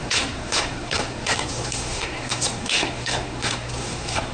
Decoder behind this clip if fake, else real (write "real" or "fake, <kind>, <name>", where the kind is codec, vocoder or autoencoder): fake, codec, SNAC